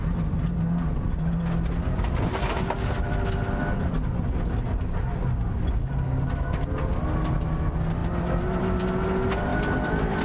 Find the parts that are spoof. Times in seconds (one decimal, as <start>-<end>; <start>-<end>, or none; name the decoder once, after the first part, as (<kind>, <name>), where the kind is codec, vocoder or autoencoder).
9.5-10.2 (vocoder, BigVGAN v2)